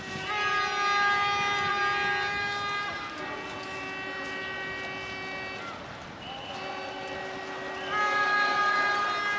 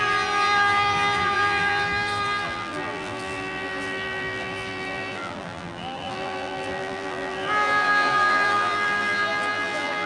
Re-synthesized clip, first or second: second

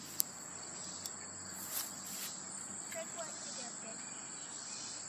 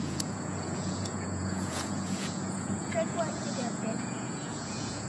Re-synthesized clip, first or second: second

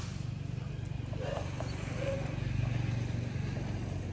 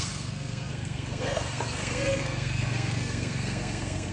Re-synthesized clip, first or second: second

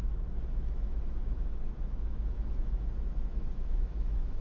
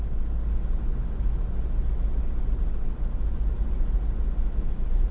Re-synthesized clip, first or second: first